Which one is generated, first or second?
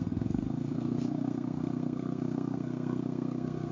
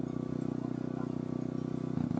first